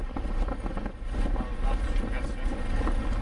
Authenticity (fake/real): real